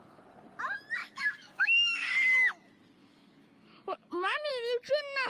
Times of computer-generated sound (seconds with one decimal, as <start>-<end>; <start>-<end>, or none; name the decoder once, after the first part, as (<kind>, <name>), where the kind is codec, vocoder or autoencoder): 1.0-2.6 (codec, DAC); 3.0-4.5